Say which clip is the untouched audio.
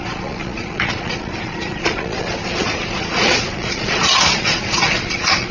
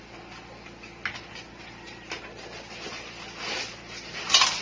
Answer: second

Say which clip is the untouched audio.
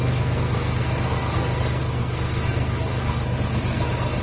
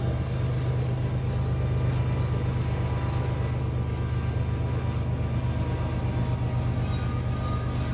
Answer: second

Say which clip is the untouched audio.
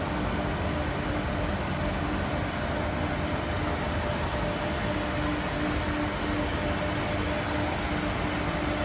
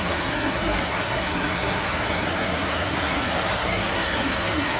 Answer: first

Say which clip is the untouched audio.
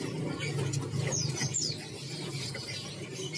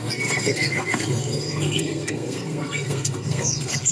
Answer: first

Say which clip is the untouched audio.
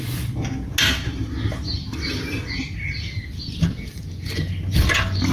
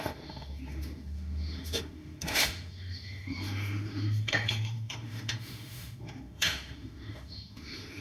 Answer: first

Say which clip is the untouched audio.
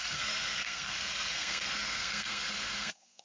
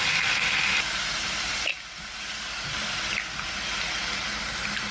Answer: second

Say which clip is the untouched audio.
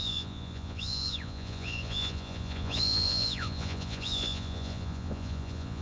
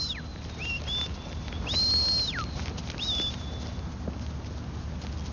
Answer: second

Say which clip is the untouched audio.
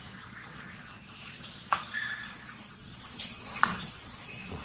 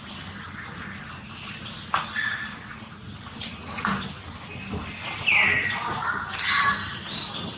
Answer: second